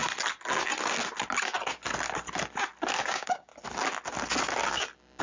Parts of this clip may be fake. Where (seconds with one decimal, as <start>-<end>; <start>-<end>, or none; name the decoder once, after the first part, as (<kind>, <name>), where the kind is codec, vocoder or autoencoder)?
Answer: 3.0-3.5 (codec, DAC)